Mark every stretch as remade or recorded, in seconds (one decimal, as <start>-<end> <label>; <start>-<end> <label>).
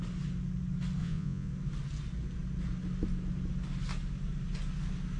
0.0-1.0 recorded; 1.0-1.5 remade; 1.5-5.2 recorded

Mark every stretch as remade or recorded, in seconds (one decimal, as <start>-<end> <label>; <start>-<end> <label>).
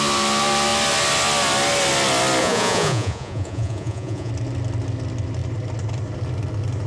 0.0-2.4 recorded; 2.4-4.3 remade; 4.3-6.9 recorded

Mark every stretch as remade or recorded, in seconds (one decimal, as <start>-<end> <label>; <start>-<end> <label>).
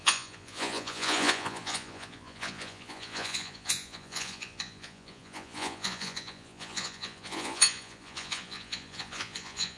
0.0-9.8 remade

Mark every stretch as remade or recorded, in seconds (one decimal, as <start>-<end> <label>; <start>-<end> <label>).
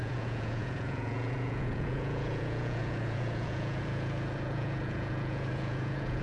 0.0-6.2 remade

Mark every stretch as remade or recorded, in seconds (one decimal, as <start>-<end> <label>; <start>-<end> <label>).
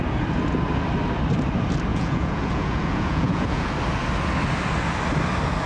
0.0-1.9 recorded; 1.9-3.7 remade; 3.7-5.7 recorded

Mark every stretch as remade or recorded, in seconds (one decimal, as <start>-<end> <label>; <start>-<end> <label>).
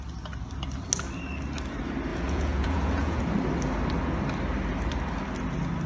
0.0-2.1 recorded; 2.1-3.2 remade; 3.2-5.9 recorded